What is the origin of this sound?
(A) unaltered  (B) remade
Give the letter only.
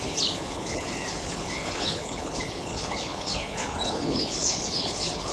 B